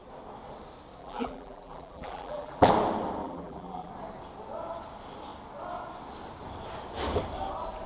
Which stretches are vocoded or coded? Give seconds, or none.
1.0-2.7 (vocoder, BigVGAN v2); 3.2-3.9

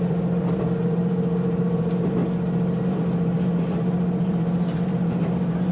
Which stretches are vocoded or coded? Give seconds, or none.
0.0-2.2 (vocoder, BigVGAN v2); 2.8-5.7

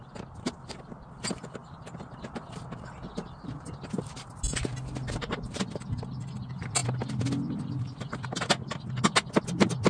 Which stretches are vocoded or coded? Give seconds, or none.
none